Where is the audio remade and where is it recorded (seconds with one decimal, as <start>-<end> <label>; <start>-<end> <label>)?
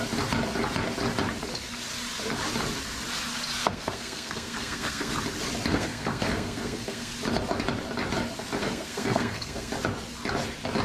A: 0.0-3.6 recorded; 3.6-5.2 remade; 5.2-5.7 recorded; 5.7-7.1 remade; 7.1-8.6 recorded; 8.6-9.7 remade; 9.7-10.8 recorded